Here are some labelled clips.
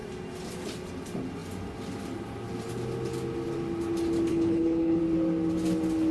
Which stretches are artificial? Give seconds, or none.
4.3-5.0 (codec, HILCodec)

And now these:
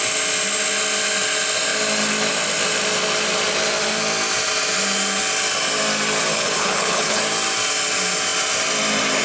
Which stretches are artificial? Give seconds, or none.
6.3-7.2 (codec, HILCodec)

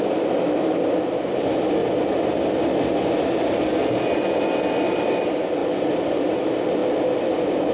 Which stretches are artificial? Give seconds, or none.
none

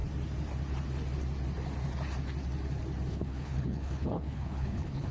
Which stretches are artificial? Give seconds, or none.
3.1-5.1 (codec, HILCodec)

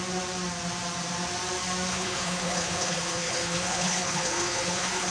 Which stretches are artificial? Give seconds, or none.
1.9-5.1 (codec, HILCodec)

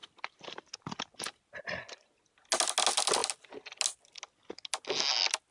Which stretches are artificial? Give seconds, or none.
none